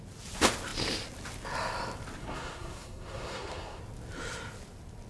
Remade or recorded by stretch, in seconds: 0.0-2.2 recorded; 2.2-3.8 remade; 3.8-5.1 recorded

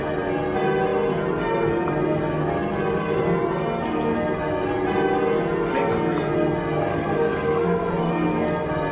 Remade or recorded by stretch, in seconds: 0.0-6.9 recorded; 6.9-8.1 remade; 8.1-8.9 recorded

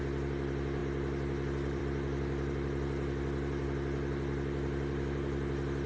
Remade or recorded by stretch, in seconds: 0.0-5.9 recorded

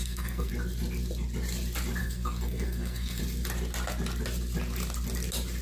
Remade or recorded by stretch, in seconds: 0.0-0.5 remade; 0.5-2.0 recorded; 2.0-3.2 remade; 3.2-5.6 recorded

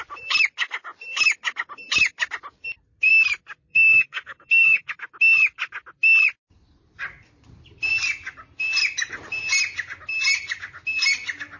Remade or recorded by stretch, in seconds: 0.0-3.7 recorded; 3.7-4.9 remade; 4.9-11.6 recorded

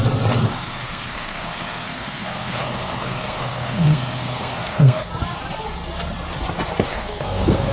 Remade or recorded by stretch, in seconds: 0.0-0.5 recorded; 0.5-5.1 remade; 5.1-6.9 recorded; 6.9-7.7 remade